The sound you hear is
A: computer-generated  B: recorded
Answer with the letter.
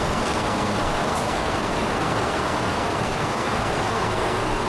A